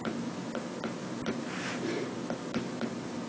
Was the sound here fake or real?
real